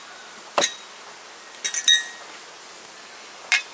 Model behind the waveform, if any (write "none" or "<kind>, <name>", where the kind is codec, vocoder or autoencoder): none